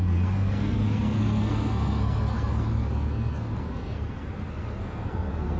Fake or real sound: fake